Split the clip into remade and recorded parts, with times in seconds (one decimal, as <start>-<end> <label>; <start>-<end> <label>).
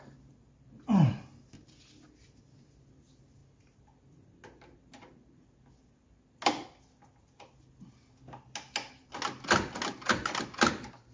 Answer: 0.0-11.1 recorded